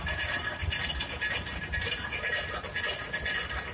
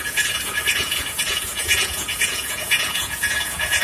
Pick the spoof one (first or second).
second